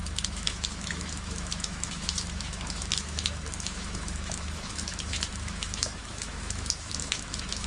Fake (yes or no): yes